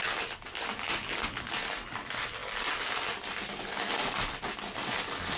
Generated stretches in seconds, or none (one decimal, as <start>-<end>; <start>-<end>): none